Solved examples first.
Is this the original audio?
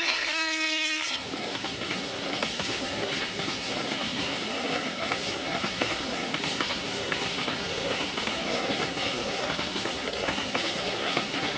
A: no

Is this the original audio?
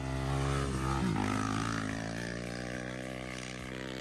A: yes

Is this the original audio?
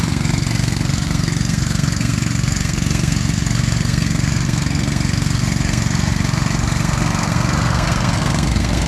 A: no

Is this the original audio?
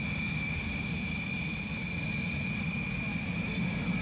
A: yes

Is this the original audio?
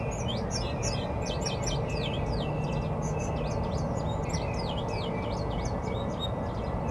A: yes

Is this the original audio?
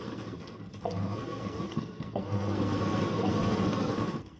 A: no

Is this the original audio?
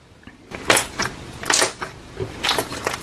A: yes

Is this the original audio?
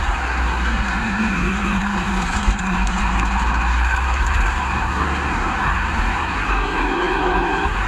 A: no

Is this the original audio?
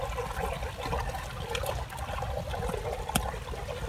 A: yes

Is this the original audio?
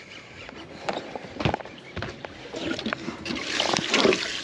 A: yes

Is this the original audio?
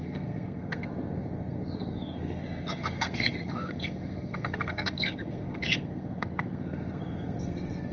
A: no